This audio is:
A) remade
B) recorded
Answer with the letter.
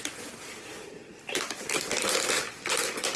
B